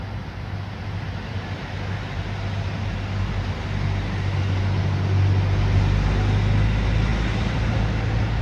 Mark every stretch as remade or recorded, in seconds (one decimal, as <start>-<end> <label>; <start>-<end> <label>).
0.0-8.4 recorded